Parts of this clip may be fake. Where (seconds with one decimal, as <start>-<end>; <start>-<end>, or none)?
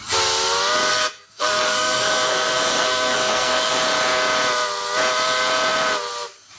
0.9-3.7